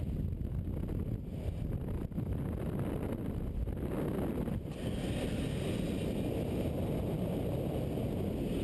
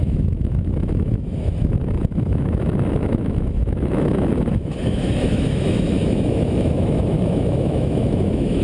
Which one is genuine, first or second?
first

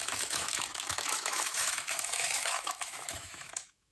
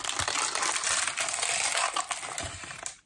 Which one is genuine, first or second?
second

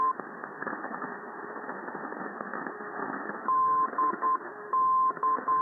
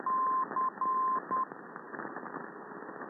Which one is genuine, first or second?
second